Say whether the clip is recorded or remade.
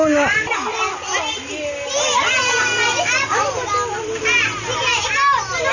recorded